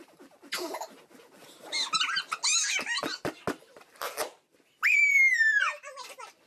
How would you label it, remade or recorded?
recorded